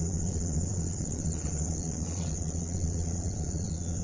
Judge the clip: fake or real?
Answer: fake